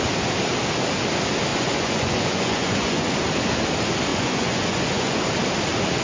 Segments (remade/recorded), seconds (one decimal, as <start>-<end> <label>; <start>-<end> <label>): 0.0-1.5 recorded; 1.5-3.1 remade; 3.1-4.1 recorded; 4.1-5.2 remade; 5.2-6.0 recorded